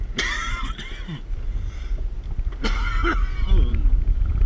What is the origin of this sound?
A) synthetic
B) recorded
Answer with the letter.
B